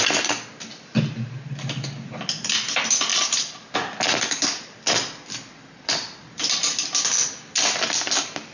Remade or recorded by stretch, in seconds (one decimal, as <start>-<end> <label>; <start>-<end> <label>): 0.0-3.1 recorded; 3.1-3.7 remade; 3.7-8.5 recorded

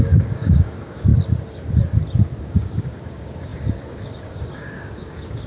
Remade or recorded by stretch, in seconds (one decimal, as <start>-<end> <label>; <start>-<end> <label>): 0.0-1.1 remade; 1.1-2.4 recorded; 2.4-5.5 remade

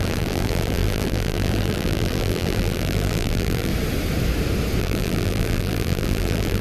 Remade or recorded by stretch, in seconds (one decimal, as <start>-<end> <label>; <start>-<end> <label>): 0.0-3.7 remade; 3.7-4.8 recorded; 4.8-6.6 remade

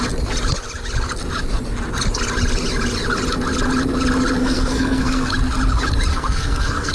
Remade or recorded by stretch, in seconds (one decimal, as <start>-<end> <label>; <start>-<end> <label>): 0.0-4.4 recorded; 4.4-5.3 remade; 5.3-6.1 recorded; 6.1-6.9 remade

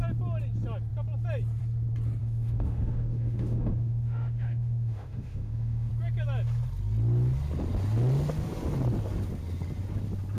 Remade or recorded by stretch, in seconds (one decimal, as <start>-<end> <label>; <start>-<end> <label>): 0.0-2.2 recorded; 2.2-5.9 remade; 5.9-10.4 recorded